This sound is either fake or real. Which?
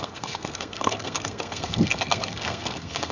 fake